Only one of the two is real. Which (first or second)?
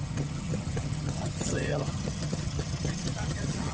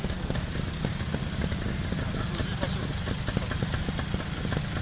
second